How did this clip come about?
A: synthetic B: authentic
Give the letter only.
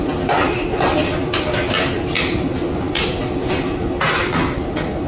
B